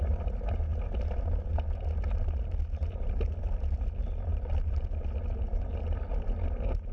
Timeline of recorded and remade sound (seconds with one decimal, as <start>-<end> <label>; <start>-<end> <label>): 0.0-6.9 recorded

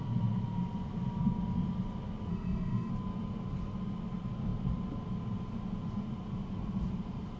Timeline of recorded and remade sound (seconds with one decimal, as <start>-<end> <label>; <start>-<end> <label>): 0.0-2.3 recorded; 2.3-2.9 remade; 2.9-7.4 recorded

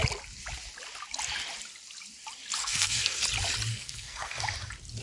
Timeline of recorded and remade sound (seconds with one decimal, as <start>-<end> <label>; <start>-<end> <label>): 0.0-2.6 recorded; 2.6-3.2 remade; 3.2-3.7 recorded; 3.7-4.4 remade; 4.4-5.0 recorded

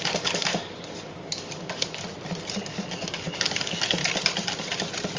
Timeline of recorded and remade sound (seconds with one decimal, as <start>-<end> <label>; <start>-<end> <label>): 0.0-2.1 remade; 2.1-2.6 recorded; 2.6-4.0 remade; 4.0-5.2 recorded